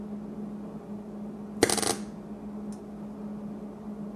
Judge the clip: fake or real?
real